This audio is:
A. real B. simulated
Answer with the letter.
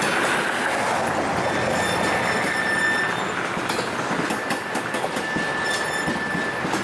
A